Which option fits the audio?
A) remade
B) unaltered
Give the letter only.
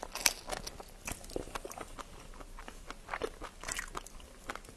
B